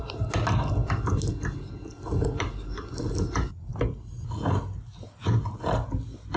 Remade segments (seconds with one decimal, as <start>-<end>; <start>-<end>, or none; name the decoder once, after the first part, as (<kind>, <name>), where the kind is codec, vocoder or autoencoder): none